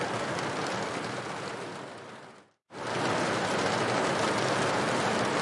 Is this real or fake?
real